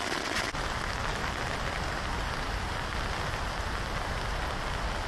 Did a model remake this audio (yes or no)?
no